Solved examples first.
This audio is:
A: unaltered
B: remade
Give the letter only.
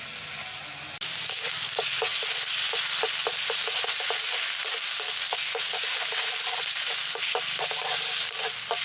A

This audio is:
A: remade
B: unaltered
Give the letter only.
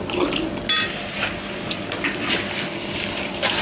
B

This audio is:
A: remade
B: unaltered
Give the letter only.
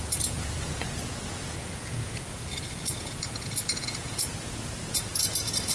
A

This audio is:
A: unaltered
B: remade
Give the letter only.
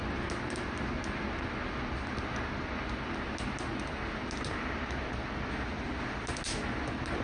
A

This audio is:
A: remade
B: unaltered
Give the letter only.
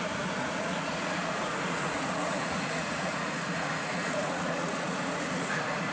A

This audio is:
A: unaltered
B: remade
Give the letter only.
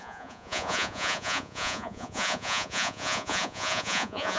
B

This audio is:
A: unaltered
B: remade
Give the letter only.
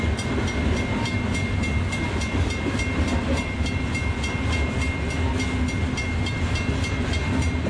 A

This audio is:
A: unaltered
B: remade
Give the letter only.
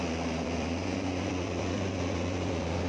B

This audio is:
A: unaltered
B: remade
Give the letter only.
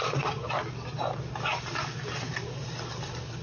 A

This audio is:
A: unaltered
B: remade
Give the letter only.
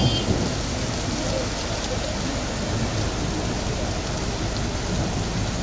A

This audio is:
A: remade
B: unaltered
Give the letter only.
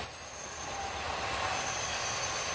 B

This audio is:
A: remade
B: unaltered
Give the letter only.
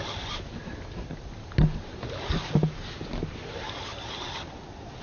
B